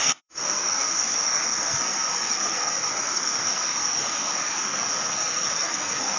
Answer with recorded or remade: remade